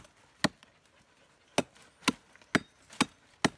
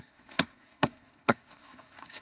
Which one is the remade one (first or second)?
second